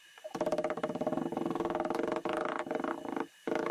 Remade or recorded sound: remade